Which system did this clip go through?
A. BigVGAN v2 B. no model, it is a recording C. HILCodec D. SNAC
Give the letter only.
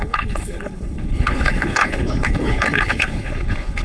C